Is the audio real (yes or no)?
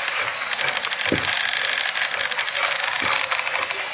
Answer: yes